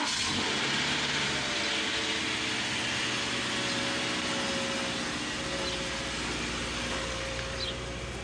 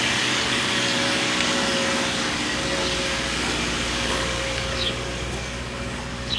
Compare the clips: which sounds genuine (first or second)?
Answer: first